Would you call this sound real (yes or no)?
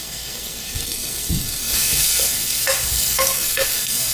no